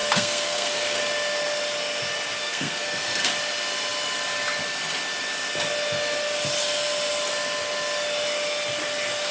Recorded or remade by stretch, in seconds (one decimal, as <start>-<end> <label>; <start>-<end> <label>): 0.0-1.0 remade; 1.0-2.4 recorded; 2.4-3.3 remade; 3.3-9.3 recorded